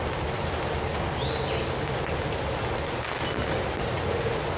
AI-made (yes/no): no